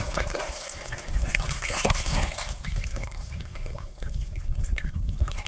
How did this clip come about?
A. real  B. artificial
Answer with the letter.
B